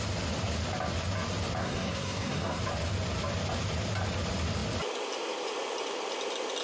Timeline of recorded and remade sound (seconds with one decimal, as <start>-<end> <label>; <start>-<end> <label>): 0.0-1.6 recorded; 1.6-2.6 remade; 2.6-6.6 recorded